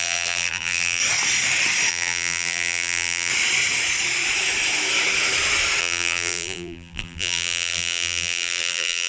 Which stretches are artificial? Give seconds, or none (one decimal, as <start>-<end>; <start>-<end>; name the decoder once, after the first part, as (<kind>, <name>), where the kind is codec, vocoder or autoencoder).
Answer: 0.0-1.0 (vocoder, BigVGAN v2); 1.9-3.3; 5.8-9.1